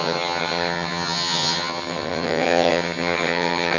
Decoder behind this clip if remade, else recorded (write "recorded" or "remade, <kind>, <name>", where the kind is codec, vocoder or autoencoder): remade, vocoder, HiFi-GAN